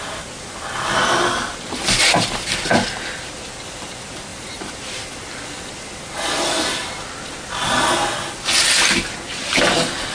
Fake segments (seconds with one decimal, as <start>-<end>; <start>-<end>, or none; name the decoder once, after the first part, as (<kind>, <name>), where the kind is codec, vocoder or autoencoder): 4.3-5.3 (vocoder, BigVGAN v2)